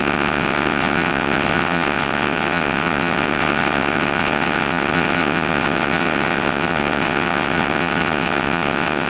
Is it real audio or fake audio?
fake